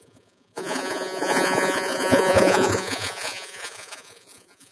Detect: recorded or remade remade